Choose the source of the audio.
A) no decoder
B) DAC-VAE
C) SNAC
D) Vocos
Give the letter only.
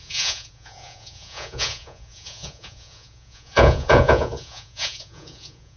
D